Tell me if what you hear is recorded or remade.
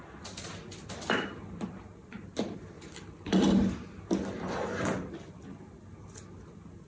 recorded